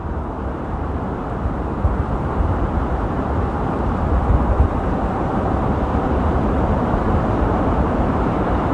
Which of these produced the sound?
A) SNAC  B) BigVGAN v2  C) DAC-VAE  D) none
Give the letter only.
B